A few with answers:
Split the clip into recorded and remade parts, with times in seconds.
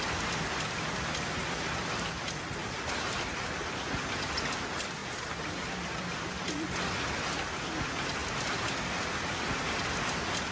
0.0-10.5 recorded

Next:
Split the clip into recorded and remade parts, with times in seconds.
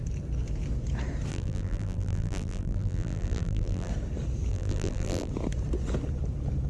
0.0-1.3 recorded; 1.3-3.9 remade; 3.9-4.5 recorded; 4.5-5.3 remade; 5.3-6.7 recorded